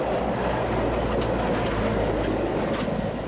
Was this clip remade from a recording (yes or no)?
no